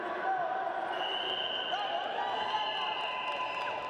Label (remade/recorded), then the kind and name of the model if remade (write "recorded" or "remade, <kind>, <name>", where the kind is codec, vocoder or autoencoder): recorded